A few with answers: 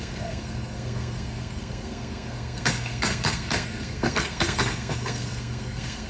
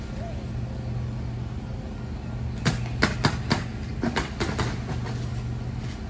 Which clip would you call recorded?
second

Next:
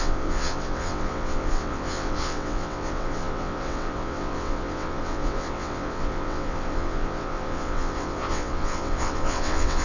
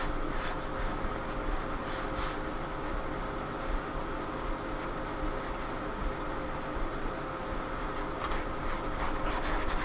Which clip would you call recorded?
second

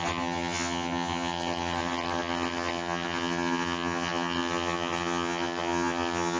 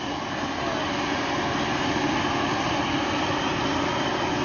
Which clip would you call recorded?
second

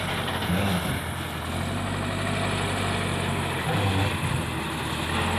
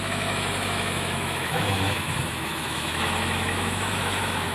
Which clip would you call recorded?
first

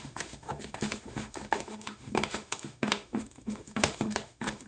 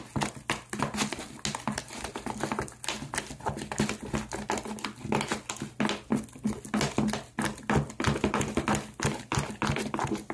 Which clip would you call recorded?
second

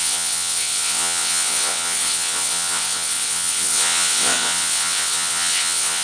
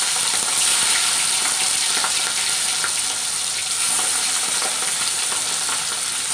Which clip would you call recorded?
second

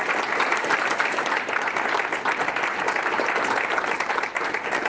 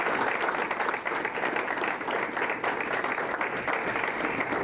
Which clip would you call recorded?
second